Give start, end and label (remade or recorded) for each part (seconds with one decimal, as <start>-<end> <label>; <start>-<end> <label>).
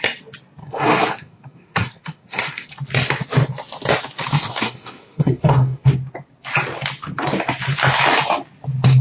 0.0-0.6 recorded; 0.6-2.7 remade; 2.7-4.3 recorded; 4.3-5.9 remade; 5.9-9.0 recorded